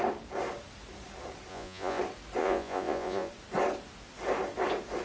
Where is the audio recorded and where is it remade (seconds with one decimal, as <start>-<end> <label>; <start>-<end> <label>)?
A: 0.0-1.5 recorded; 1.5-2.0 remade; 2.0-2.4 recorded; 2.4-3.3 remade; 3.3-5.0 recorded